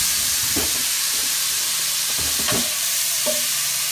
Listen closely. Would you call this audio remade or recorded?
remade